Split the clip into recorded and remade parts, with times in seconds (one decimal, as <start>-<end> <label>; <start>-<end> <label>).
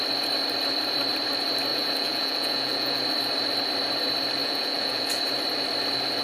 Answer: 0.0-1.7 recorded; 1.7-3.0 remade; 3.0-4.4 recorded; 4.4-5.2 remade; 5.2-6.2 recorded